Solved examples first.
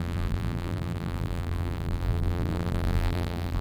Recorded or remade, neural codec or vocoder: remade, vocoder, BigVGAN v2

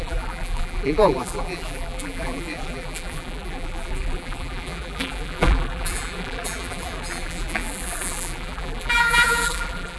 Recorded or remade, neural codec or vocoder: remade, vocoder, BigVGAN v2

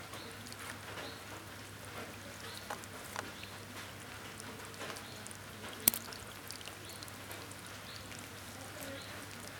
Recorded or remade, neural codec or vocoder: recorded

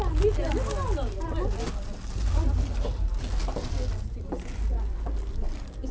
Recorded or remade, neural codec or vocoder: recorded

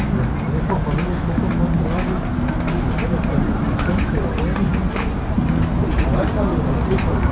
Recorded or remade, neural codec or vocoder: recorded